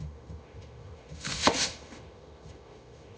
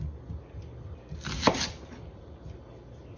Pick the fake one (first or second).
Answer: first